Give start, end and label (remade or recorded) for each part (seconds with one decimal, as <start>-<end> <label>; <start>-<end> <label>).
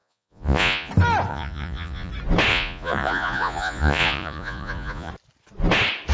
0.0-0.9 remade; 0.9-1.3 recorded; 1.3-2.1 remade; 2.1-2.5 recorded; 2.5-5.1 remade; 5.1-6.1 recorded